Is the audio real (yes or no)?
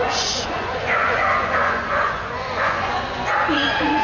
no